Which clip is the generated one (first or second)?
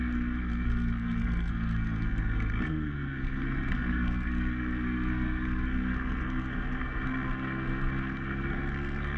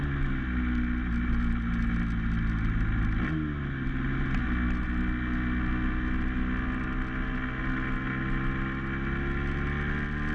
first